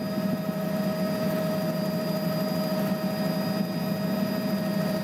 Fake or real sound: real